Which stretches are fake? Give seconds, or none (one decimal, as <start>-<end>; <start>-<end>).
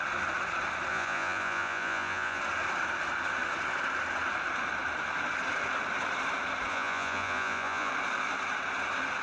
0.9-2.4; 6.7-7.9